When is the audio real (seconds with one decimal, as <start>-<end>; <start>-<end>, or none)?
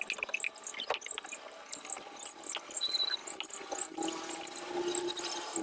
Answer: 0.0-5.6